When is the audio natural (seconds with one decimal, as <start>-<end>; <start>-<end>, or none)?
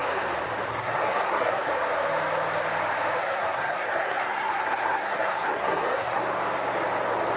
0.0-0.7; 1.7-3.2; 6.2-7.4